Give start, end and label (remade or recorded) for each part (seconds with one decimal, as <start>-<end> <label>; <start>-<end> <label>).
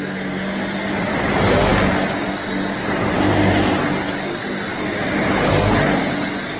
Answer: 0.0-6.6 recorded